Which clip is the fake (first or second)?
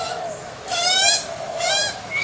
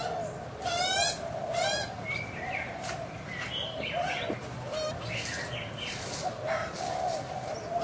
first